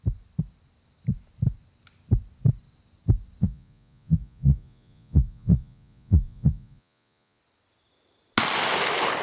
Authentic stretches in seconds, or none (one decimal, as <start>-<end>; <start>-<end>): 0.0-3.4; 7.4-9.2